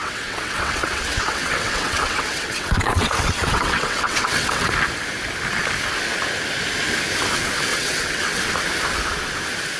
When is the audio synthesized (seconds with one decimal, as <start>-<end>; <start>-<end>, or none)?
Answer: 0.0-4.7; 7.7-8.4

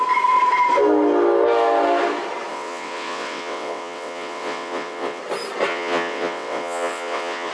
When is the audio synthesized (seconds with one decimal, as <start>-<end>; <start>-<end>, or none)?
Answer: 2.5-5.2; 5.7-7.5

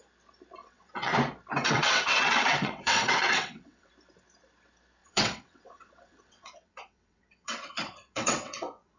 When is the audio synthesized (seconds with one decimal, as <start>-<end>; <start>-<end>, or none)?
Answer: 0.6-1.1; 1.6-3.9; 5.0-9.0

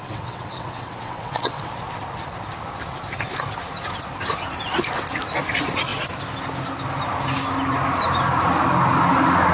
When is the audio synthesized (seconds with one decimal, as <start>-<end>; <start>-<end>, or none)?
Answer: 0.0-1.7

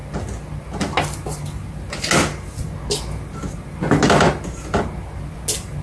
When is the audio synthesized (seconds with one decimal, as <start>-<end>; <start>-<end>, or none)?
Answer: none

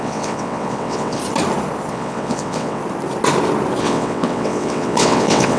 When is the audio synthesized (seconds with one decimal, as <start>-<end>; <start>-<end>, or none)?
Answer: 0.0-1.2; 1.9-2.8; 3.8-5.6